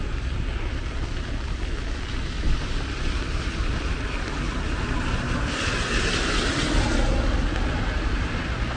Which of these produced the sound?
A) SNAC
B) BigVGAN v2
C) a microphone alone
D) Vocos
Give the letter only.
C